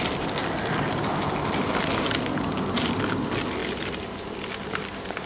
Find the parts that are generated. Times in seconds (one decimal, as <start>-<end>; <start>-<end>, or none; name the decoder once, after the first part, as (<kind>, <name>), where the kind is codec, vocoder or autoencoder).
none